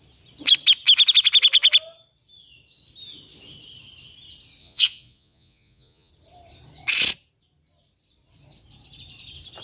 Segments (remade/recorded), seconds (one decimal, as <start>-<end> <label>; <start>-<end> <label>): 0.0-4.6 recorded; 4.6-6.1 remade; 6.1-9.6 recorded